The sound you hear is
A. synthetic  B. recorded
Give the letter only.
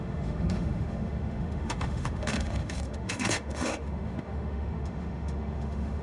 A